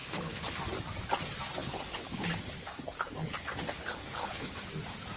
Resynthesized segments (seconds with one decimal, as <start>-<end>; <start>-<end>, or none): 0.0-0.6; 1.6-4.7